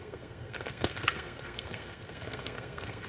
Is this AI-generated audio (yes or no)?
yes